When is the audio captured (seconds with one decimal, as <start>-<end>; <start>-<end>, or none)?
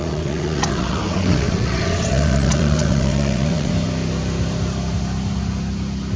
3.7-6.2